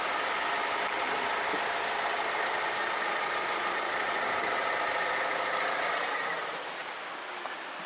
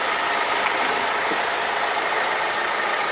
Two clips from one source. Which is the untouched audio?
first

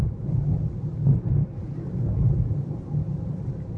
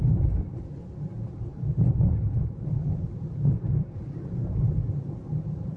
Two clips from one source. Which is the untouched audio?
first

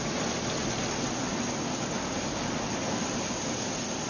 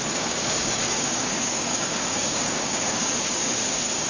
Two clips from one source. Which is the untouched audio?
first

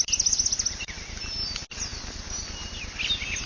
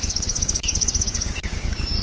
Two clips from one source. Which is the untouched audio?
first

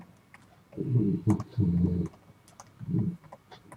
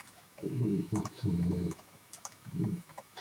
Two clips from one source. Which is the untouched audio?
first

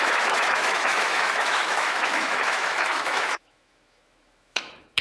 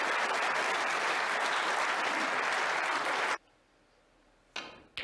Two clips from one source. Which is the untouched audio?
second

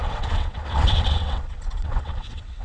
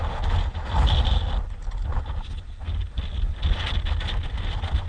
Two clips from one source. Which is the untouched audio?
second